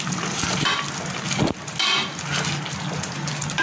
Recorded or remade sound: recorded